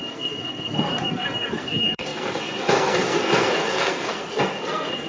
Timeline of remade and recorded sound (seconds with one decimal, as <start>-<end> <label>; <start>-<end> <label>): 0.0-5.1 remade